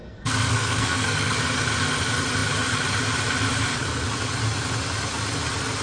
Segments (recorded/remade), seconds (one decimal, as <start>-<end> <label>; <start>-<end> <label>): 0.0-1.4 remade; 1.4-5.8 recorded